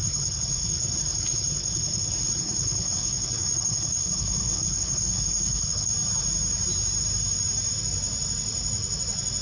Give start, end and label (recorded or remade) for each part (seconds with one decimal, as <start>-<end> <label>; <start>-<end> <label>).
0.0-5.9 remade; 5.9-9.4 recorded